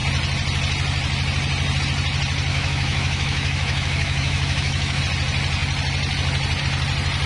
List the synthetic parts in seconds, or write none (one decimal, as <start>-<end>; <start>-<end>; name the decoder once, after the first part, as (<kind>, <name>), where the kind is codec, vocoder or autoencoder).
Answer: 2.5-5.0 (autoencoder, DAC-VAE)